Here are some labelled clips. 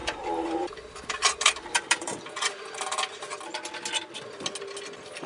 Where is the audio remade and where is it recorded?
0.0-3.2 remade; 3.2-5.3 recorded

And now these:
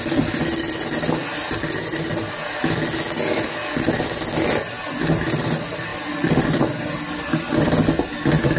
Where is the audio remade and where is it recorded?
0.0-8.6 recorded